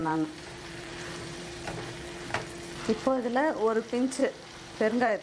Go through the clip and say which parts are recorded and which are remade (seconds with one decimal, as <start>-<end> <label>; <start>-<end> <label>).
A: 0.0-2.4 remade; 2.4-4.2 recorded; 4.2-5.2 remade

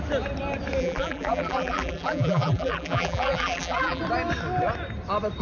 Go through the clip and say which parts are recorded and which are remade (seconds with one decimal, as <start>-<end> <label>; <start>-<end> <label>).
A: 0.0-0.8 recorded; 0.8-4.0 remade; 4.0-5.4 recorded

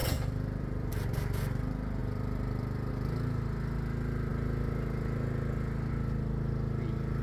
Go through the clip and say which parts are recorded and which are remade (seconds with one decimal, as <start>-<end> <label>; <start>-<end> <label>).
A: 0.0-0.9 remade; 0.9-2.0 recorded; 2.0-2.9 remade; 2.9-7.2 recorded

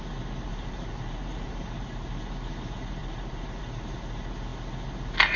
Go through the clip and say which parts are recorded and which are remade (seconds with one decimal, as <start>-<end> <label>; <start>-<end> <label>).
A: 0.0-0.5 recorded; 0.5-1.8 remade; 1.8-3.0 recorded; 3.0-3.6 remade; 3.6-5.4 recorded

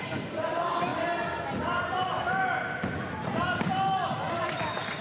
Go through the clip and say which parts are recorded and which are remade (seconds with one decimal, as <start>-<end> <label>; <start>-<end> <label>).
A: 0.0-5.0 recorded

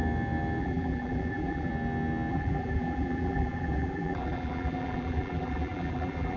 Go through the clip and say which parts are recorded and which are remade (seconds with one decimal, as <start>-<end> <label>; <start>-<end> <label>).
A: 0.0-0.6 recorded; 0.6-1.7 remade; 1.7-2.3 recorded; 2.3-6.4 remade

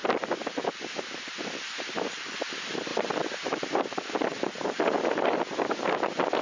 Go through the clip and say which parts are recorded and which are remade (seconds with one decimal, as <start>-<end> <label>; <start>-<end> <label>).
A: 0.0-6.4 recorded